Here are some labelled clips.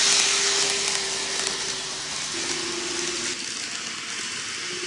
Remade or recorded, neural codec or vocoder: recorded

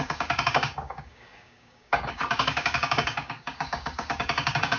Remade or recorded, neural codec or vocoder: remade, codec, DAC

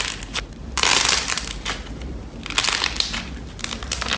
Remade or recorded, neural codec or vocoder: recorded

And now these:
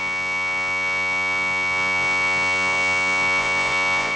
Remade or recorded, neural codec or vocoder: remade, vocoder, Vocos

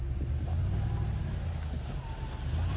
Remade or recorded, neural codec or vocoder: recorded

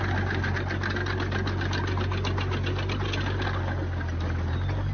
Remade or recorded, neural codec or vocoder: recorded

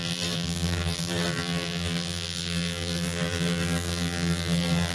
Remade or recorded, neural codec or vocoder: remade, vocoder, BigVGAN v2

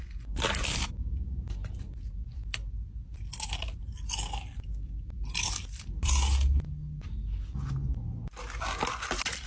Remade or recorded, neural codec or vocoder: recorded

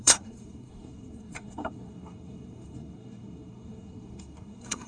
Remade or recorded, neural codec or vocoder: remade, codec, SNAC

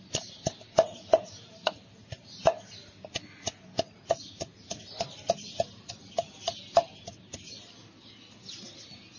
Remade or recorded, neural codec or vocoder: recorded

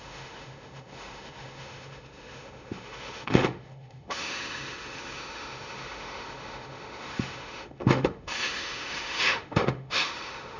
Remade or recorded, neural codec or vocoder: remade, autoencoder, DAC-VAE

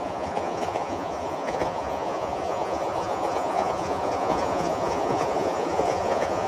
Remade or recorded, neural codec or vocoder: remade, vocoder, Vocos